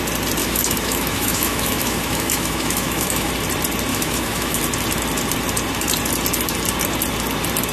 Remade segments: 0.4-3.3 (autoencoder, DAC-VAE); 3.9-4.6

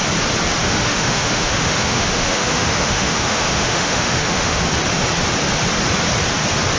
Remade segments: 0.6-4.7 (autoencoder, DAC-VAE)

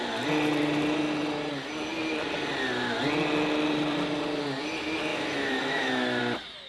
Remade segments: 5.1-6.2 (autoencoder, DAC-VAE)

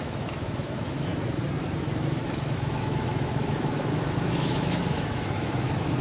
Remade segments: 0.0-1.1 (autoencoder, DAC-VAE); 1.8-6.0